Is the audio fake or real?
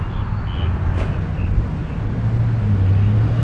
real